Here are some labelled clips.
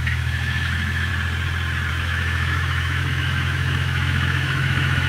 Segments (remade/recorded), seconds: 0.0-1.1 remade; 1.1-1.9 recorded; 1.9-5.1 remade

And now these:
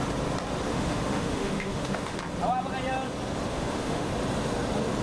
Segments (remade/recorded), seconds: 0.0-0.7 recorded; 0.7-2.2 remade; 2.2-3.5 recorded; 3.5-4.1 remade; 4.1-5.0 recorded

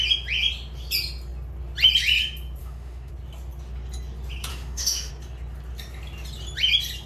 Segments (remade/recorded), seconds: 0.0-2.6 recorded; 2.6-3.1 remade; 3.1-4.5 recorded; 4.5-5.1 remade; 5.1-7.1 recorded